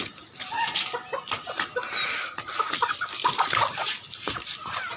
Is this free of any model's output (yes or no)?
yes